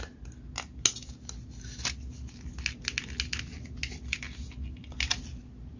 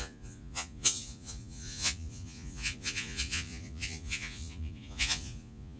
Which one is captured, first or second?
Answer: first